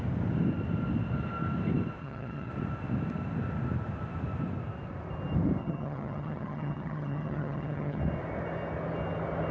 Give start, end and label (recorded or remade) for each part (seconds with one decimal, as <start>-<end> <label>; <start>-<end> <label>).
0.0-2.0 recorded; 2.0-2.5 remade; 2.5-5.6 recorded; 5.6-8.0 remade; 8.0-9.5 recorded